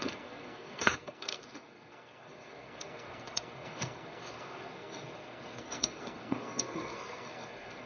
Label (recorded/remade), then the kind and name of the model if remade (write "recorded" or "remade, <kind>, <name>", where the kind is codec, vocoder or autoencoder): remade, codec, SNAC